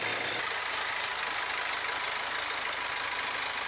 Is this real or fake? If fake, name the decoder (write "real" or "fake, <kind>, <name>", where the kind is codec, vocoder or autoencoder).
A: real